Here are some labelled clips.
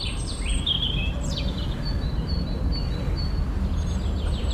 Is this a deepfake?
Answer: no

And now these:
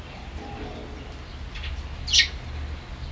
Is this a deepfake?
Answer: no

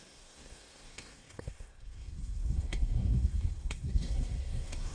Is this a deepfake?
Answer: yes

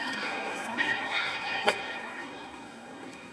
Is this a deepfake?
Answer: yes